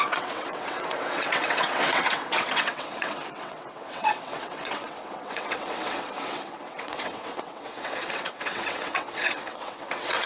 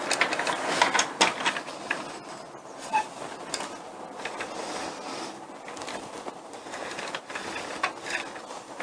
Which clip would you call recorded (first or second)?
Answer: second